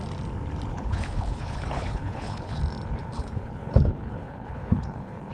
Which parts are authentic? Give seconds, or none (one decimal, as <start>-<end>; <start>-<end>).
0.0-0.7; 2.6-3.0